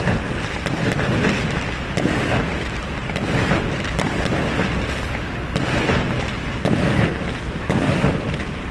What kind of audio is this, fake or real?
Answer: real